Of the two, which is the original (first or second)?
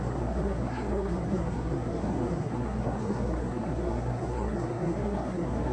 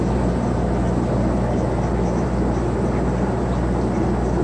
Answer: second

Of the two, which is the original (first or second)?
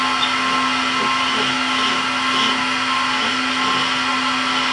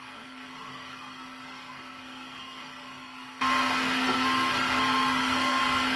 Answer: first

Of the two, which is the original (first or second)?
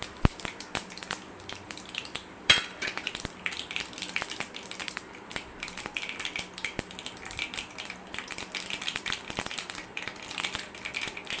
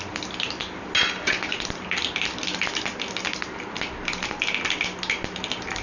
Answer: second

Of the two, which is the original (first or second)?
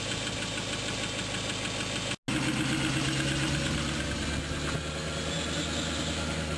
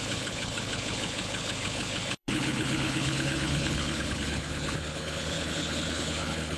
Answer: first